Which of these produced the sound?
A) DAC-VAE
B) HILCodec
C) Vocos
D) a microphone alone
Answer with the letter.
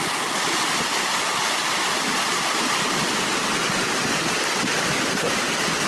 D